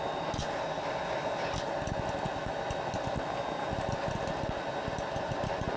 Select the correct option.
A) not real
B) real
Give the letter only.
B